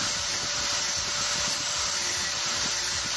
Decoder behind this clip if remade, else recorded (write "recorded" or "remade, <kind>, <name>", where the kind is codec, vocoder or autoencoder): remade, vocoder, BigVGAN v2